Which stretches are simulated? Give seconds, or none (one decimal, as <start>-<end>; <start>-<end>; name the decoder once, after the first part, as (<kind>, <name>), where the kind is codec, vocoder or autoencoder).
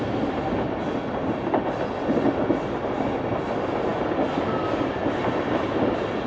none